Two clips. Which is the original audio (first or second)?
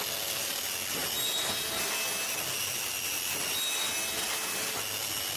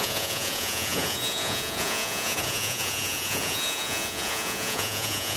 first